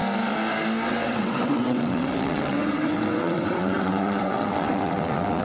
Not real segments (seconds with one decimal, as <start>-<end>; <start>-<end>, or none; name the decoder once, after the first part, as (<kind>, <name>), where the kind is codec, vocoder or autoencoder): 0.9-5.4 (vocoder, WaveNeXt)